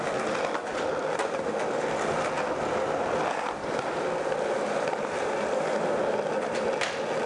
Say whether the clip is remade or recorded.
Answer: recorded